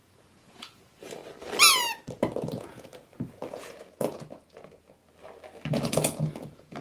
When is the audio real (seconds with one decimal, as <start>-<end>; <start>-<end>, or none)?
1.2-2.5; 2.9-3.5; 5.0-5.7